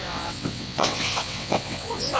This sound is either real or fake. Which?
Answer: fake